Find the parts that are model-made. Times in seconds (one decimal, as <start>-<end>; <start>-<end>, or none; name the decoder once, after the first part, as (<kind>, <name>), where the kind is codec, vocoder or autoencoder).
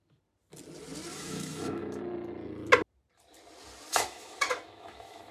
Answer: 1.1-2.0 (autoencoder, DAC-VAE); 3.9-5.3